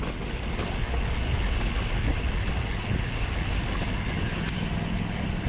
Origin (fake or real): real